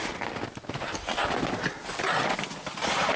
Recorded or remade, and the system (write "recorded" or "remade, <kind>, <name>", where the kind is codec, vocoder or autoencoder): recorded